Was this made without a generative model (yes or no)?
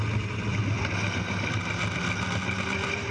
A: yes